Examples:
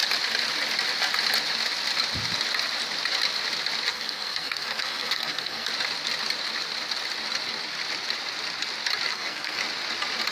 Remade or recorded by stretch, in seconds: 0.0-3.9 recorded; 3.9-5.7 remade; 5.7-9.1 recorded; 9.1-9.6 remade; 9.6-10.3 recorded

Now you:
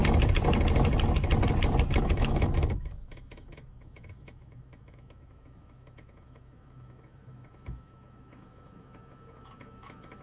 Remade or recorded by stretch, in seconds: 0.0-2.0 recorded; 2.0-10.2 remade

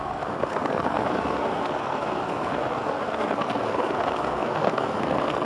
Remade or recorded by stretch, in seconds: 0.0-5.5 remade

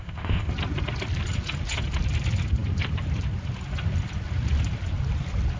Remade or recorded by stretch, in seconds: 0.0-0.5 remade; 0.5-5.6 recorded

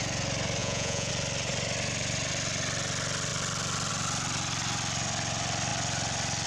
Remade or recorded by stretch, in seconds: 0.0-0.6 recorded; 0.6-1.1 remade; 1.1-6.5 recorded

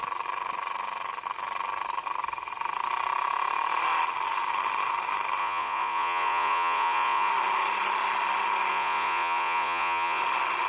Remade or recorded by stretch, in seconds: 0.0-5.4 recorded; 5.4-7.3 remade; 7.3-8.7 recorded; 8.7-10.2 remade; 10.2-10.7 recorded

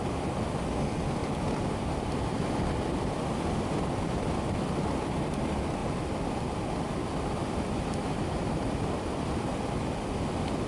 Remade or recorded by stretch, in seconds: 0.0-1.2 recorded; 1.2-4.7 remade; 4.7-5.8 recorded; 5.8-6.6 remade; 6.6-7.4 recorded; 7.4-9.5 remade; 9.5-10.7 recorded

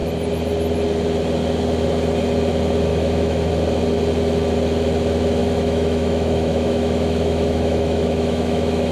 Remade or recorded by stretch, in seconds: 0.0-2.9 recorded; 2.9-3.5 remade; 3.5-5.4 recorded; 5.4-8.9 remade